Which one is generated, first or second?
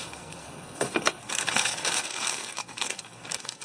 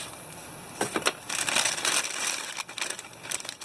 first